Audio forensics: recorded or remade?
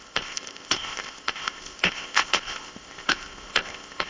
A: remade